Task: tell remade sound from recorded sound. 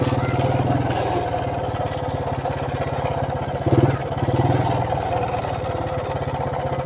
recorded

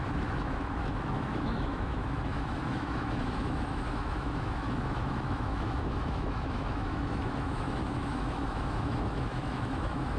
remade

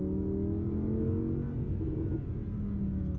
recorded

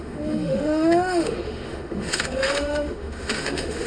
remade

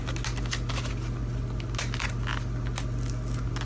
recorded